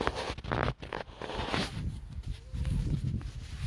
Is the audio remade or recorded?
recorded